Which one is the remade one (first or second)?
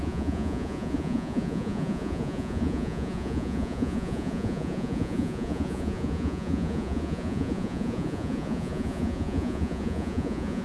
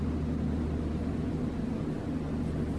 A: first